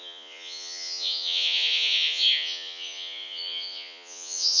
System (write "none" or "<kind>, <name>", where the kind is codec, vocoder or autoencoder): vocoder, Vocos